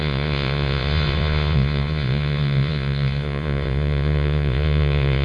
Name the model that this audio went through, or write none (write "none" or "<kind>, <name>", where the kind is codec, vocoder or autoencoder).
vocoder, Vocos